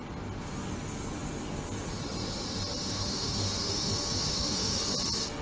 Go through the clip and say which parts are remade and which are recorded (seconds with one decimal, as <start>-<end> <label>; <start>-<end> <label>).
0.0-2.8 recorded; 2.8-3.9 remade; 3.9-4.3 recorded; 4.3-4.8 remade; 4.8-5.4 recorded